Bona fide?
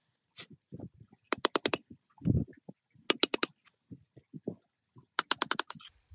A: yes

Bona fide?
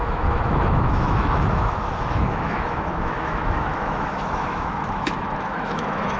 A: no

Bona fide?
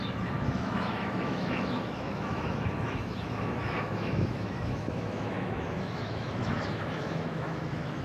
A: no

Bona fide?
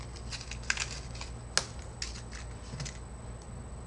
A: yes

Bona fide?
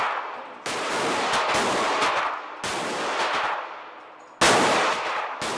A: yes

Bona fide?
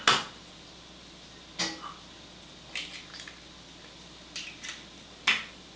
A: yes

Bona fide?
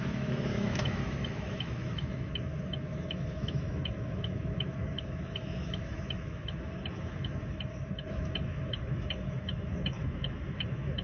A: no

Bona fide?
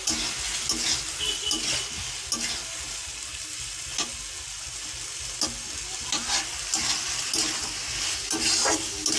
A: yes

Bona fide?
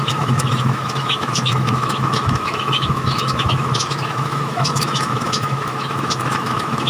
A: no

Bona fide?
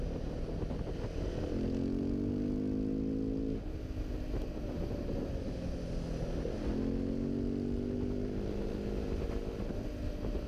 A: yes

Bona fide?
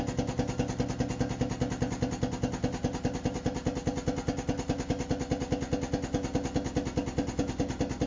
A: yes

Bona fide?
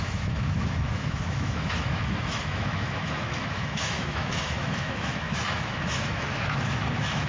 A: no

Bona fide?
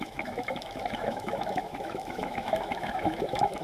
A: no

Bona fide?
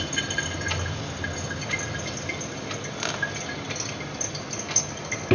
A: yes